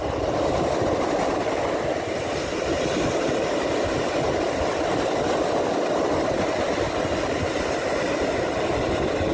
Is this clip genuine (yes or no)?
yes